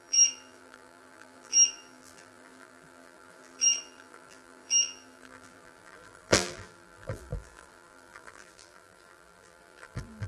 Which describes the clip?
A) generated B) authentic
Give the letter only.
A